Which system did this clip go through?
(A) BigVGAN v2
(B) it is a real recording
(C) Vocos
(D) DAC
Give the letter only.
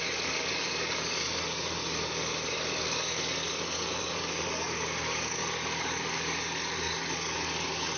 D